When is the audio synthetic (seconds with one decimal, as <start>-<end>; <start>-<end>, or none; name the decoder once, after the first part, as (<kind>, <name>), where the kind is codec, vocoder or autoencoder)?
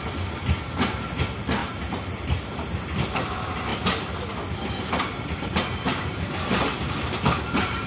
1.6-2.1 (vocoder, BigVGAN v2)